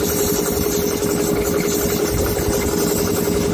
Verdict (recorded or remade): recorded